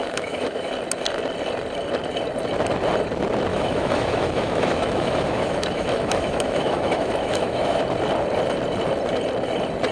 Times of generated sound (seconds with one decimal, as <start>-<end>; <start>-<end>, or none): 0.0-0.7; 3.5-7.8